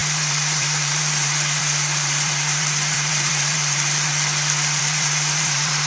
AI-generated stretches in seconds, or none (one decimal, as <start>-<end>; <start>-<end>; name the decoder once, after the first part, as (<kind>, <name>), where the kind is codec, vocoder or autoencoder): 0.0-4.1 (vocoder, BigVGAN v2); 4.8-5.9